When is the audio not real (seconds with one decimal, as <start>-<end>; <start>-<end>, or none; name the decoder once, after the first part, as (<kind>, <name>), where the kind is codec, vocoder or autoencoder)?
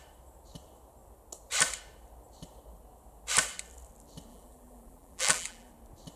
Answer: 4.3-5.7 (vocoder, BigVGAN v2)